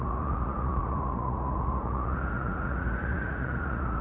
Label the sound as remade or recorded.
remade